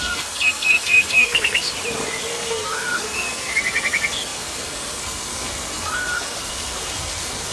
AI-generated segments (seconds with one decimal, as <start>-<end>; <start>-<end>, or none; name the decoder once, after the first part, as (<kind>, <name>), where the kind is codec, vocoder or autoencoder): 0.0-1.7 (codec, SNAC); 2.3-7.5